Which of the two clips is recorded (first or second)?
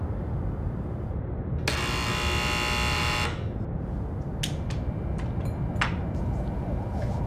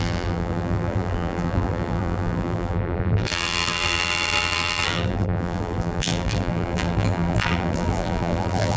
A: first